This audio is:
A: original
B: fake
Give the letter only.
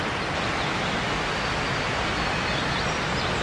A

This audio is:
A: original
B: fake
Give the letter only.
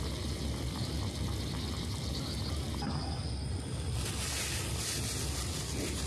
A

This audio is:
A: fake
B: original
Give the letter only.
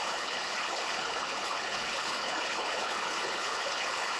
A